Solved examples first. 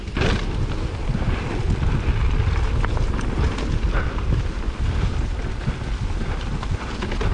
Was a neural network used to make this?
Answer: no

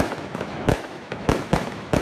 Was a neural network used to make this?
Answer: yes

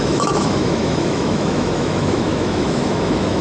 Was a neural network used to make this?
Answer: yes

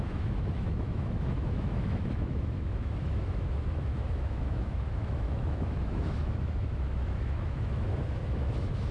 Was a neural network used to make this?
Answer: yes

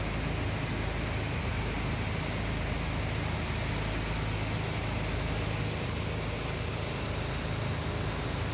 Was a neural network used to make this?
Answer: no